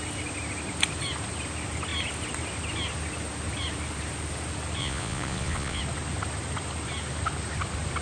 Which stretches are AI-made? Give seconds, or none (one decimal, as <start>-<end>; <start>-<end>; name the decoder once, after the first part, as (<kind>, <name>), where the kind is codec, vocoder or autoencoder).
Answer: 4.8-5.8 (vocoder, Vocos)